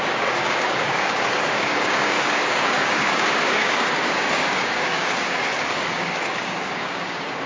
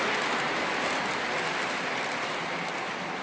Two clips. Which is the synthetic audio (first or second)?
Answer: first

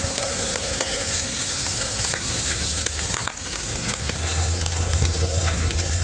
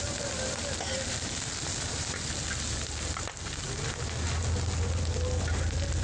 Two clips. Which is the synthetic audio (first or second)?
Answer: first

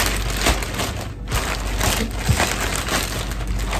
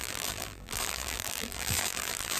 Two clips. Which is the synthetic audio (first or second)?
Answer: second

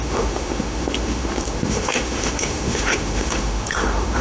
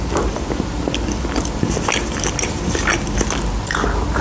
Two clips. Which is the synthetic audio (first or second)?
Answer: first